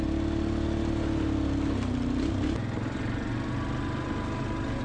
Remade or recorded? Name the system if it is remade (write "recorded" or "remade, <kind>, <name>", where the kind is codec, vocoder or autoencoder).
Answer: recorded